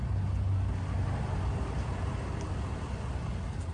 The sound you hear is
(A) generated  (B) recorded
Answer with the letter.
B